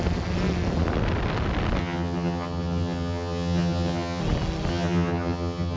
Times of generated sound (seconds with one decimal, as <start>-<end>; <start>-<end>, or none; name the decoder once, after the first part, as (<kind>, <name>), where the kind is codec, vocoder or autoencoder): 1.8-4.2 (vocoder, HiFi-GAN); 4.7-5.8